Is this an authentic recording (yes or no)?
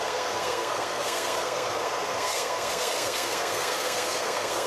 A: no